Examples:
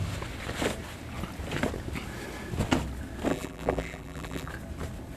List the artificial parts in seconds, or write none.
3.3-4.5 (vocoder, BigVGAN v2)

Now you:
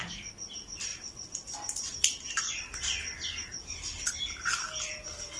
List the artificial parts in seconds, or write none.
none